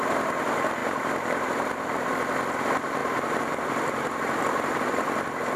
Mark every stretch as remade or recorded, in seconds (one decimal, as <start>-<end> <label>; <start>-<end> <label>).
0.0-0.8 recorded; 0.8-2.1 remade; 2.1-3.0 recorded; 3.0-5.6 remade